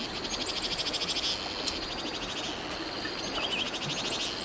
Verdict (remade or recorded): recorded